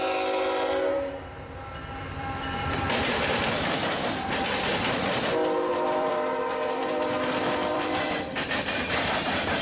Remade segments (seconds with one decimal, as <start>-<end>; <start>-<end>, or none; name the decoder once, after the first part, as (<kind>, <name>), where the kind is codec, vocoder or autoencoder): 2.0-4.6 (vocoder, BigVGAN v2); 5.7-9.2